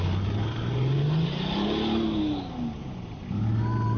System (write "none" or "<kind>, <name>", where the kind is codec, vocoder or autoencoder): none